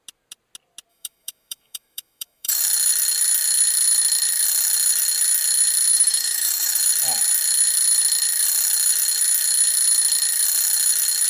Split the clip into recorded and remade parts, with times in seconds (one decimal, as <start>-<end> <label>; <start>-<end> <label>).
0.0-0.9 recorded; 0.9-2.6 remade; 2.6-5.9 recorded; 5.9-6.8 remade; 6.8-11.3 recorded